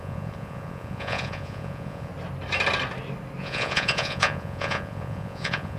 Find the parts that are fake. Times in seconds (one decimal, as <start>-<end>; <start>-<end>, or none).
0.0-2.1; 3.4-5.8